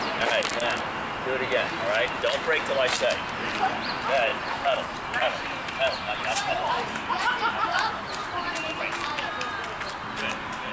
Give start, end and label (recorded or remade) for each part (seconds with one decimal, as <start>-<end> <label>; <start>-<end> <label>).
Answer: 0.0-4.3 recorded; 4.3-8.8 remade; 8.8-10.7 recorded